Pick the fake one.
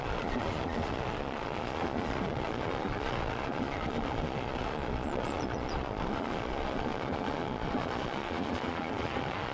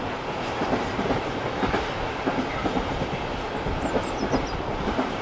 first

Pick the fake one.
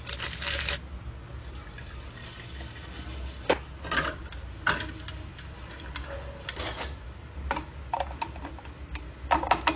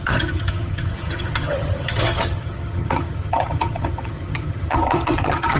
second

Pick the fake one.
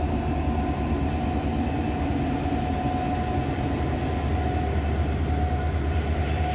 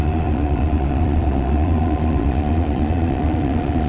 second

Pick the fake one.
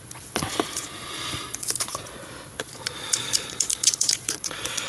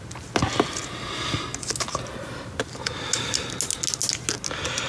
first